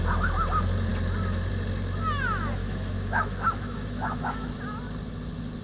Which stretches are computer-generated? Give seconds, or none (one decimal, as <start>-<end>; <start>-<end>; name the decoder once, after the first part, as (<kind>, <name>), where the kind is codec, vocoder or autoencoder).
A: 2.6-4.5 (autoencoder, DAC-VAE)